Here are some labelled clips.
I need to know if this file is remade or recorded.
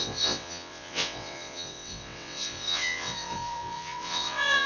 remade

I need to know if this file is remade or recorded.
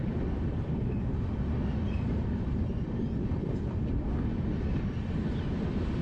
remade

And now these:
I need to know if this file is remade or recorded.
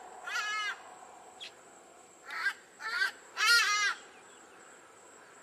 recorded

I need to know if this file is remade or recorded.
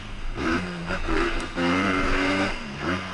remade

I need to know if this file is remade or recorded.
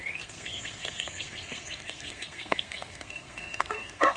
remade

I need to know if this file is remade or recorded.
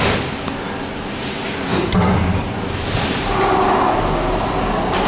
recorded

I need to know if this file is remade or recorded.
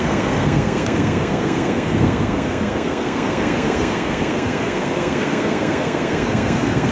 remade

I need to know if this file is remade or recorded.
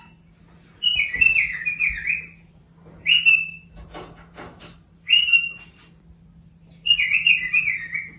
recorded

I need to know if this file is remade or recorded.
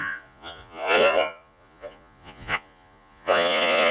remade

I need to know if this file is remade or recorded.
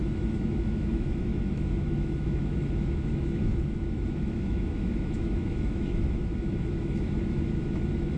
remade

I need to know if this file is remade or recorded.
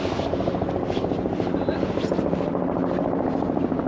remade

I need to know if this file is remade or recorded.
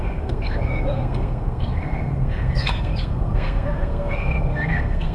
remade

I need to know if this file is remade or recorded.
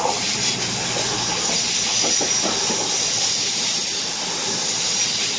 recorded